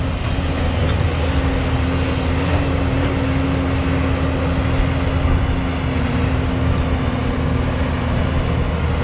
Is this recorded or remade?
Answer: recorded